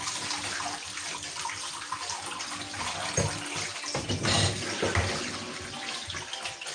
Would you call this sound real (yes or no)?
yes